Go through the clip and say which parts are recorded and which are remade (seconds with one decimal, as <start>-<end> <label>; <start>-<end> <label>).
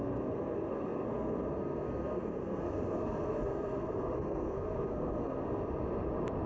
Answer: 0.0-5.6 remade; 5.6-6.5 recorded